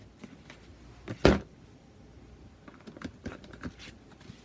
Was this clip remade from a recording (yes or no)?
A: no